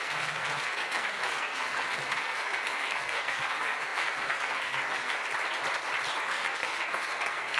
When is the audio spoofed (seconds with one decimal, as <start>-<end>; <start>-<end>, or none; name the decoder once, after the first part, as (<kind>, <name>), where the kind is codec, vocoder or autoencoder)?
0.0-5.2 (codec, SNAC); 6.2-7.6